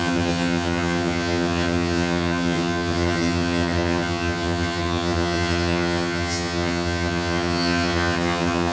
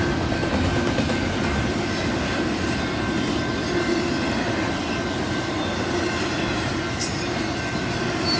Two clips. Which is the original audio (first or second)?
second